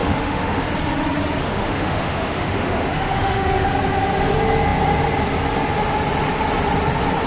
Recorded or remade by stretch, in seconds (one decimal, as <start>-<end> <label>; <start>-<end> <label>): 0.0-0.7 remade; 0.7-1.4 recorded; 1.4-3.7 remade; 3.7-7.3 recorded